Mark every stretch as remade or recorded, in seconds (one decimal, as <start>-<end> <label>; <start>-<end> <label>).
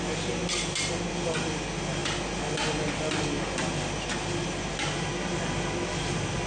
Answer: 0.0-6.5 recorded